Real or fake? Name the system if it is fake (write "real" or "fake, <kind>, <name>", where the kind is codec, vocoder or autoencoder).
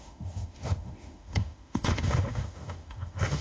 fake, autoencoder, DAC-VAE